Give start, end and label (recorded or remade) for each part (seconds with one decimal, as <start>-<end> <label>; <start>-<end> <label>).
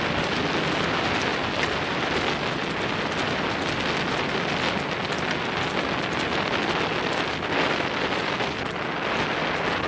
0.0-9.9 recorded